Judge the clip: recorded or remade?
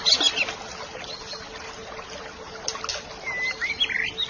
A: recorded